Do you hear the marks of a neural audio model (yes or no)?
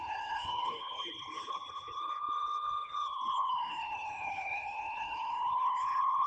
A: yes